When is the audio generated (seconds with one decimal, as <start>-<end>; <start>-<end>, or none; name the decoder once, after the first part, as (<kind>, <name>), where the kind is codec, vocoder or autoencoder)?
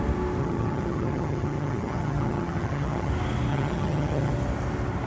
0.4-3.1 (vocoder, HiFi-GAN); 3.5-4.3